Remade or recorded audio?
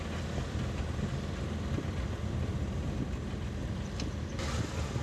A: recorded